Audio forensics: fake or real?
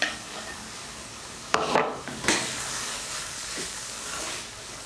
fake